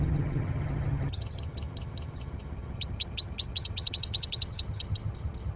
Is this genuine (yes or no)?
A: no